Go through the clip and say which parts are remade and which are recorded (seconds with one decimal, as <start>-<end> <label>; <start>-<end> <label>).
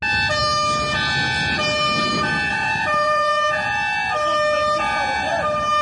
0.0-2.5 recorded; 2.5-3.7 remade; 3.7-5.8 recorded